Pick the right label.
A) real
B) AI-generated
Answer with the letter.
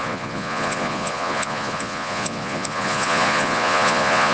B